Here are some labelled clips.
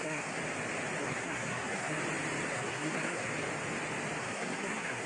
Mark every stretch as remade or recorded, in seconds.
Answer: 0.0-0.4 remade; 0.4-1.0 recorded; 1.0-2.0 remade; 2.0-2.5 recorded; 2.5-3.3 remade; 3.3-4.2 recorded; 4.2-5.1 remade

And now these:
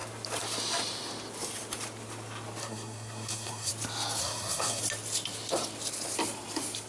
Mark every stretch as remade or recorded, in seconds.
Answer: 0.0-2.6 recorded; 2.6-3.7 remade; 3.7-4.2 recorded; 4.2-4.8 remade; 4.8-6.9 recorded